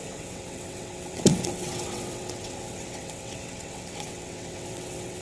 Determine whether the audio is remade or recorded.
remade